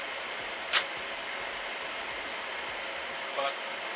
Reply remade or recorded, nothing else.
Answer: recorded